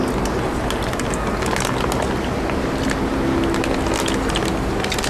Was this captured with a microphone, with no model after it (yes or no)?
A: yes